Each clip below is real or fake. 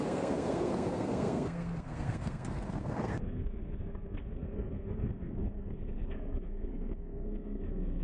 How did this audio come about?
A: fake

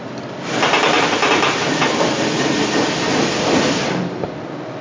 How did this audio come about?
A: fake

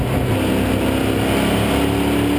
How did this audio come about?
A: real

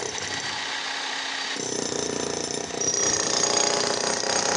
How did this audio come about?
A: real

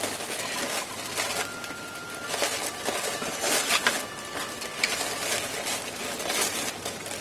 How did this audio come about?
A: real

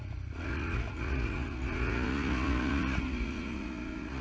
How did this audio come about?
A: fake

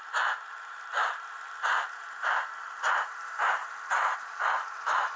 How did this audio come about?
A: fake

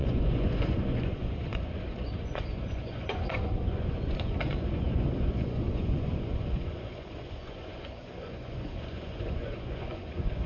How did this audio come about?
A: fake